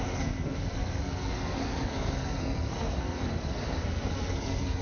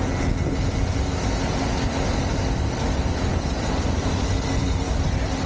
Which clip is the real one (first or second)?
second